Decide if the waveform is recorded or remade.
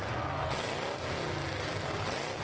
recorded